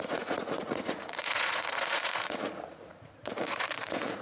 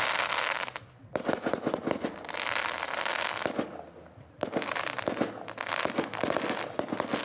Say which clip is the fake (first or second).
first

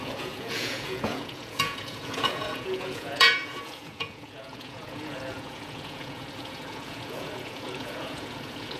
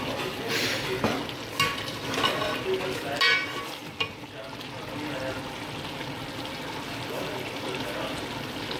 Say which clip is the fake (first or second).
first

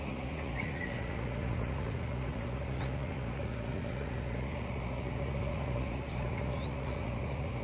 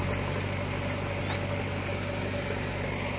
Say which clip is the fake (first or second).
first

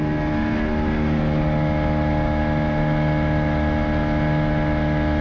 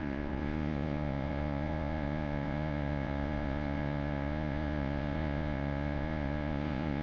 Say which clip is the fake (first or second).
second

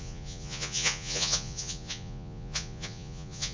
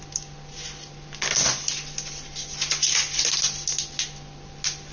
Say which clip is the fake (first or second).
first